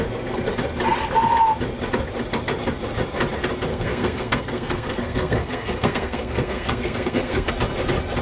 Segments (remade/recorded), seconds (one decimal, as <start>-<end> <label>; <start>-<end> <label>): 0.0-3.7 recorded; 3.7-7.5 remade; 7.5-8.2 recorded